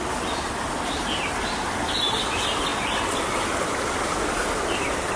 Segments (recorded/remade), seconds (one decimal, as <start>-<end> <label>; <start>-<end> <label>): 0.0-5.2 recorded